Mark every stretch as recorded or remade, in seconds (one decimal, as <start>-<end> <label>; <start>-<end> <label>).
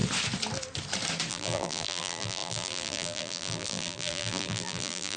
0.0-1.3 recorded; 1.3-5.2 remade